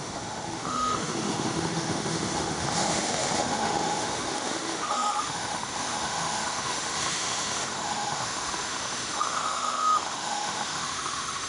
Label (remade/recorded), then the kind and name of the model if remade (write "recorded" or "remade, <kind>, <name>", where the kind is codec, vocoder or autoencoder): remade, autoencoder, DAC-VAE